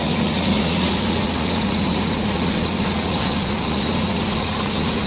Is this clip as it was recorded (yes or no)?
no